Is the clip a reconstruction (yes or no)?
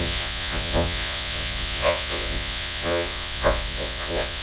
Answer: yes